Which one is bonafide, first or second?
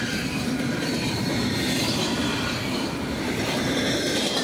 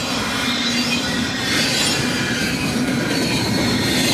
second